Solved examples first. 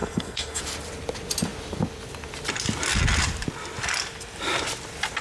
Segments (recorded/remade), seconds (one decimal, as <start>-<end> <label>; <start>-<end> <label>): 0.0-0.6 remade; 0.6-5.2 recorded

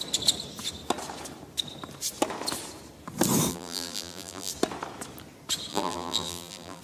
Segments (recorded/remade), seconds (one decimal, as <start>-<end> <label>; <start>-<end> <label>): 0.0-3.5 recorded; 3.5-4.5 remade; 4.5-5.7 recorded; 5.7-6.8 remade

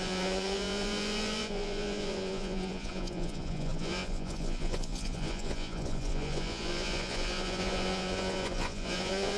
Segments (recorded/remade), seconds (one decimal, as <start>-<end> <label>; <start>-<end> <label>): 0.0-9.4 remade